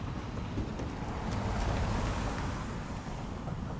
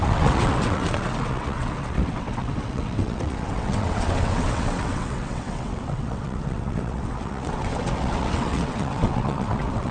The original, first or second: first